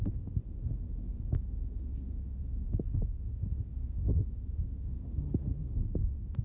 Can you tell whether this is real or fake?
fake